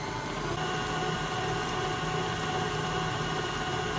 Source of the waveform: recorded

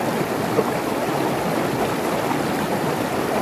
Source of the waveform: recorded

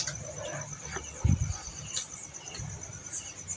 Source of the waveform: recorded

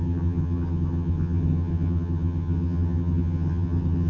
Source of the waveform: remade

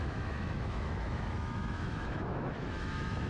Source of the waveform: remade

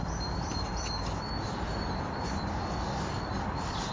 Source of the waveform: recorded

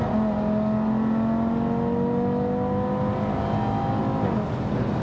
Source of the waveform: recorded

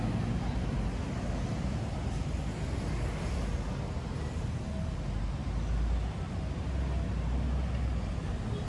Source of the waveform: recorded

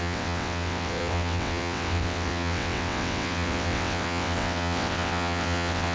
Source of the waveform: remade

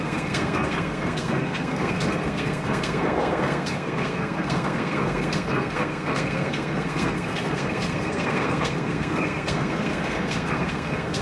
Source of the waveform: remade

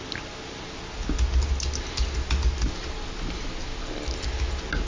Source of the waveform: recorded